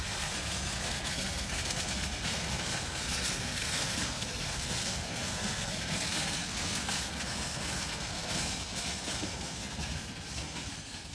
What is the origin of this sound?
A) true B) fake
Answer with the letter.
B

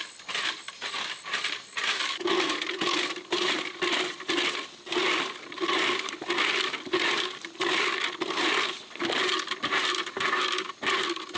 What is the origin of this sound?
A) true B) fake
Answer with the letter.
A